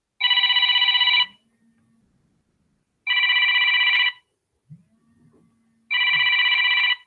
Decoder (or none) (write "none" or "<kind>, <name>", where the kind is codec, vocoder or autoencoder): none